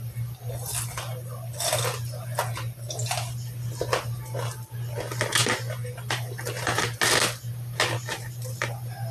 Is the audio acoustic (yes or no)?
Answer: yes